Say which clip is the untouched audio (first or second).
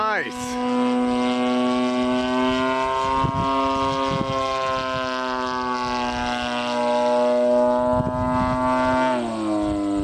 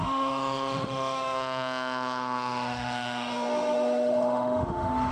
first